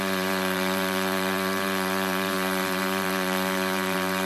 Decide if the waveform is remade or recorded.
remade